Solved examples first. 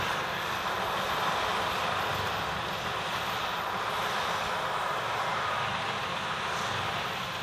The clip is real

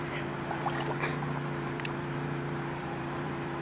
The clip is fake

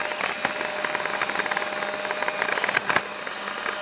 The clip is real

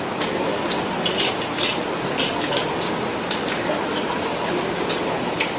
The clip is real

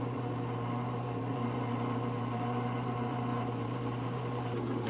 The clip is fake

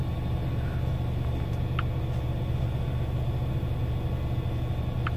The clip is real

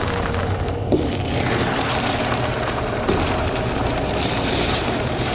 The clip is fake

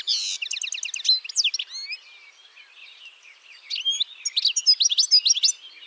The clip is real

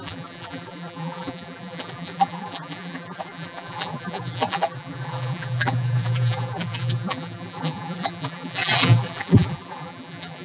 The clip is fake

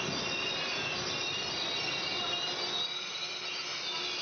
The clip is real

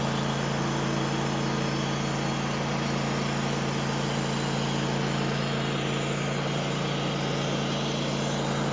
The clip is real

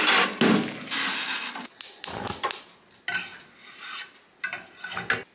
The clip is real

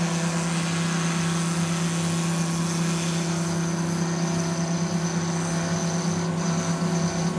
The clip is real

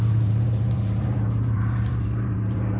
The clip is fake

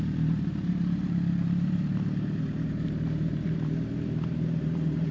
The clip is fake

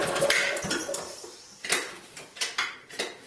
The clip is fake